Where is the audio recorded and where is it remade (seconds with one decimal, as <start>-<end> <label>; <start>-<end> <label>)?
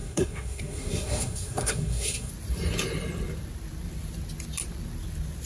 0.0-2.3 remade; 2.3-5.5 recorded